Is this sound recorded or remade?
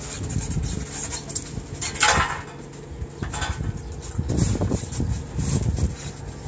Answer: recorded